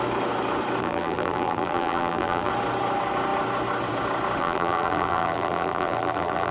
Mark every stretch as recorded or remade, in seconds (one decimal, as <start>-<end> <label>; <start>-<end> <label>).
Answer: 0.0-0.8 recorded; 0.8-2.5 remade; 2.5-4.4 recorded; 4.4-6.5 remade